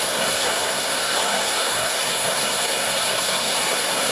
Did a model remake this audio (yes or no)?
yes